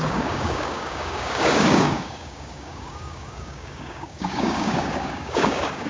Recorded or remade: remade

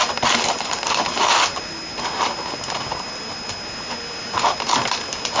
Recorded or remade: recorded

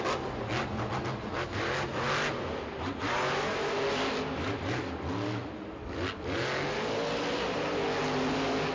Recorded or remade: recorded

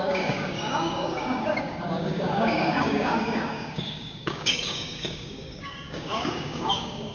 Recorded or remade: remade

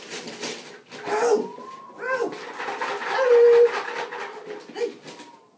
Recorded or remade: recorded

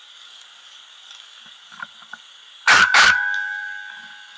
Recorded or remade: remade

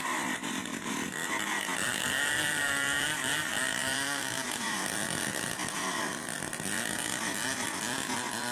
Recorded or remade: recorded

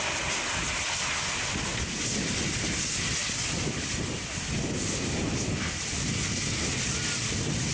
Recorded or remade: recorded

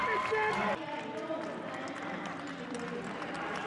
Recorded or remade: recorded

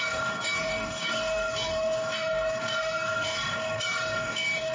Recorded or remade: remade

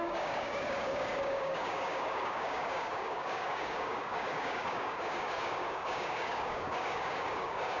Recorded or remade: remade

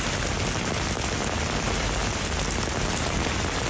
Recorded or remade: recorded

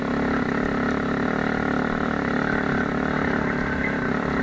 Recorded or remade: recorded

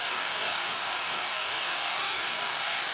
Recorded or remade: remade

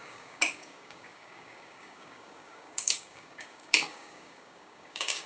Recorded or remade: remade